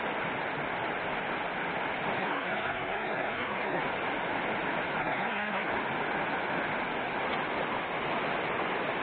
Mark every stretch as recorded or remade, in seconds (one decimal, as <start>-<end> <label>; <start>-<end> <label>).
0.0-2.2 recorded; 2.2-3.8 remade; 3.8-5.0 recorded; 5.0-5.7 remade; 5.7-9.0 recorded